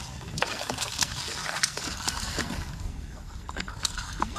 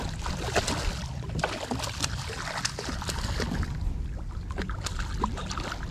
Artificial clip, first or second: first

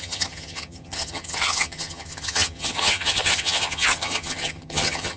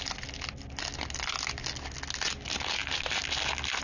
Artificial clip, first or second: first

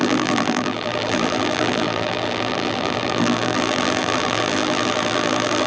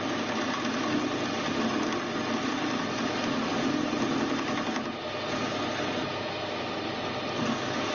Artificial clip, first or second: first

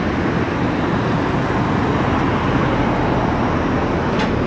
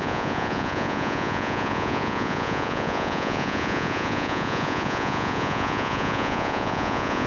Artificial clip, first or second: second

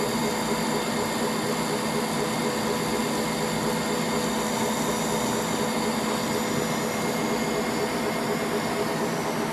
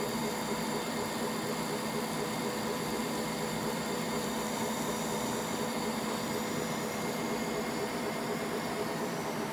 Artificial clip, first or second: second